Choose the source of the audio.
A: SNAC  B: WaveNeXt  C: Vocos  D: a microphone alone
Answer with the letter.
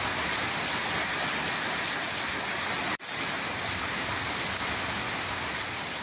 D